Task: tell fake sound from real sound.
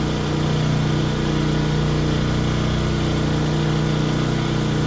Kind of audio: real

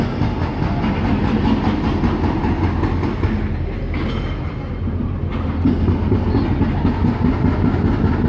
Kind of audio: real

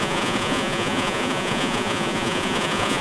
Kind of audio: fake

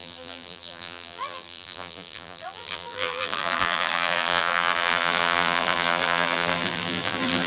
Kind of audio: fake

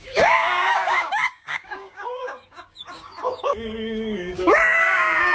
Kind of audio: fake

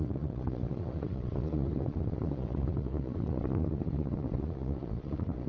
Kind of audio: fake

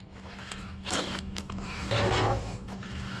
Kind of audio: fake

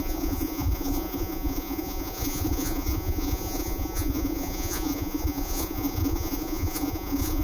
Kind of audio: fake